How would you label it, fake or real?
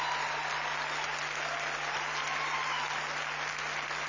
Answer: real